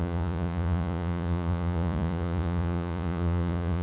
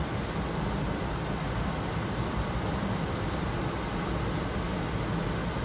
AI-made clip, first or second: first